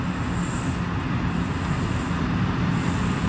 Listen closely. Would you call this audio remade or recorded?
recorded